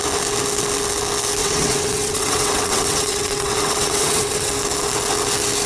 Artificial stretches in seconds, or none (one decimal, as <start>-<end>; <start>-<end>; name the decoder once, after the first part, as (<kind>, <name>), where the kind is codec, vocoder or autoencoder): 1.4-4.5 (vocoder, WaveNeXt)

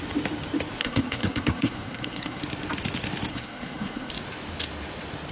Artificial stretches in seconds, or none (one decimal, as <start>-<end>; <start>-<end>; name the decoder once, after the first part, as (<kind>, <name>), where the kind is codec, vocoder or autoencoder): 0.8-2.4 (codec, SNAC); 3.3-4.1

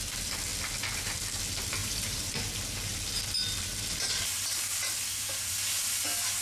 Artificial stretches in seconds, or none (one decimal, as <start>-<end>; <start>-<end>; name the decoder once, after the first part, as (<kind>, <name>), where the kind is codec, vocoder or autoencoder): 1.8-2.4 (vocoder, BigVGAN v2)

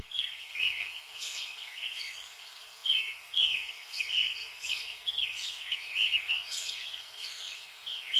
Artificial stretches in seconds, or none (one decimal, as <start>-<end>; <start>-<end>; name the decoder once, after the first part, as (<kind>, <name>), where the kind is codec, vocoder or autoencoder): 0.0-8.2 (codec, SNAC)